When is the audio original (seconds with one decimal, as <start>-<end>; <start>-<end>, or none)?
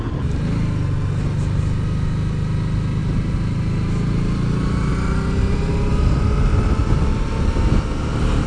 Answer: 0.0-3.0; 4.9-6.8; 7.3-8.5